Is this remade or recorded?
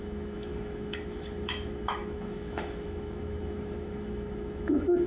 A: remade